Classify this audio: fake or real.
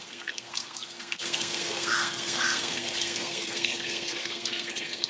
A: fake